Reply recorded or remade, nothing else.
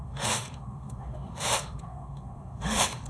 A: remade